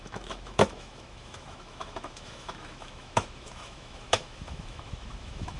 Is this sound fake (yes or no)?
yes